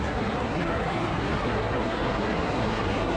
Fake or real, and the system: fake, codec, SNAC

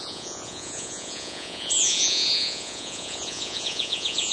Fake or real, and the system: fake, vocoder, Vocos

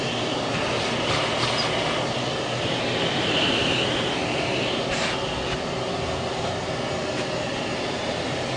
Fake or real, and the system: real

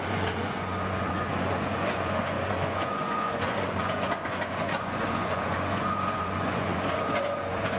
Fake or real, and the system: fake, vocoder, Vocos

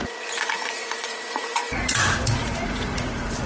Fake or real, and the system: fake, vocoder, Vocos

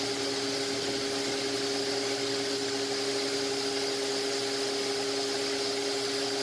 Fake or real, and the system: real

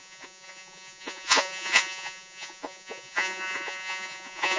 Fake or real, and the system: fake, vocoder, Vocos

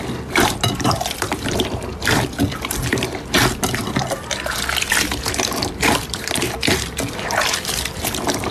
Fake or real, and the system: fake, vocoder, BigVGAN v2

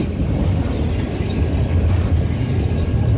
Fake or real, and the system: real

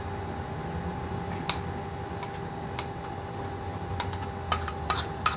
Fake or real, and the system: real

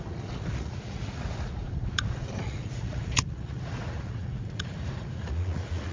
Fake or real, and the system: fake, vocoder, Vocos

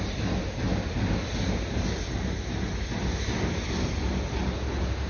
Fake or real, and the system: real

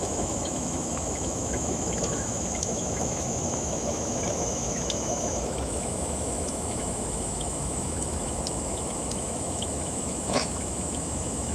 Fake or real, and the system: fake, autoencoder, DAC-VAE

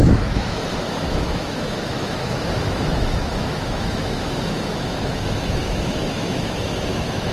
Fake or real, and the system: fake, autoencoder, DAC-VAE